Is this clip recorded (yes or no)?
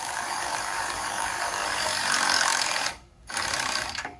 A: no